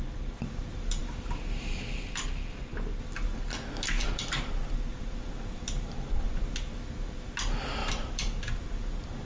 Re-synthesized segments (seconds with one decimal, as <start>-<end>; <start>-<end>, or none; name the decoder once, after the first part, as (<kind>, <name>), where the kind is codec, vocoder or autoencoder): 4.0-4.6 (vocoder, BigVGAN v2); 7.8-8.4